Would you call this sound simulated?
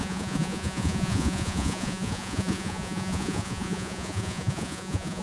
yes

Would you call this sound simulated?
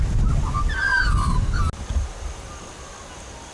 no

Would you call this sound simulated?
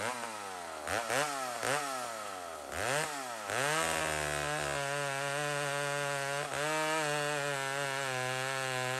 no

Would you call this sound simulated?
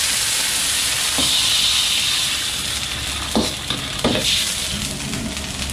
no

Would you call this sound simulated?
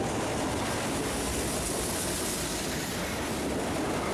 no